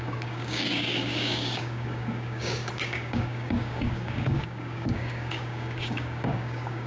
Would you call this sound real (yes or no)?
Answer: no